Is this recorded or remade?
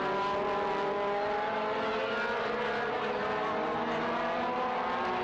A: recorded